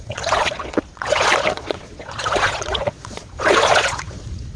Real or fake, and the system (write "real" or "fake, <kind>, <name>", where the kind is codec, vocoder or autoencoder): fake, vocoder, Vocos